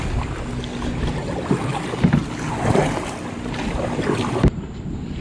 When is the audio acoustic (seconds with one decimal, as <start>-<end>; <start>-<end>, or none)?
0.0-5.2